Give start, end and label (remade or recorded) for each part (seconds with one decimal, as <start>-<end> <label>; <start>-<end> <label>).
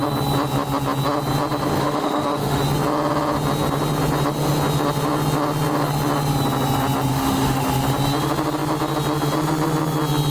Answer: 0.0-1.8 recorded; 1.8-2.6 remade; 2.6-7.1 recorded; 7.1-7.6 remade; 7.6-10.3 recorded